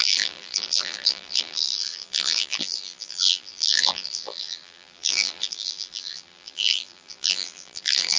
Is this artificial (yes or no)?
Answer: yes